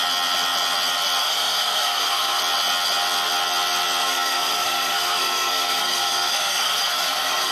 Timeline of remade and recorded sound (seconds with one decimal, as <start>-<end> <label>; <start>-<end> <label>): 0.0-1.2 recorded; 1.2-2.4 remade; 2.4-4.0 recorded; 4.0-7.5 remade